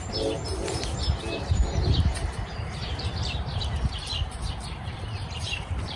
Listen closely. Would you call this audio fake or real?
fake